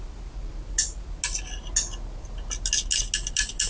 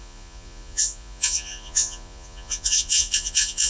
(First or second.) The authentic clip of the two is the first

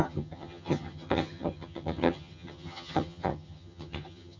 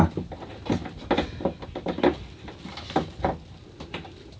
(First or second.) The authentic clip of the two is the second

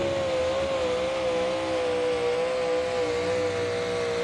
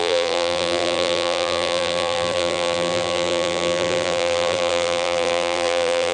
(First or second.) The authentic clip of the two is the first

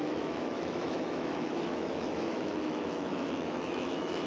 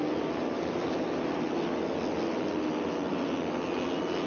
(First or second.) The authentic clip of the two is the second